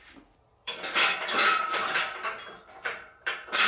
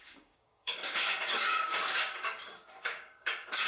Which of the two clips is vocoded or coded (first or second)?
second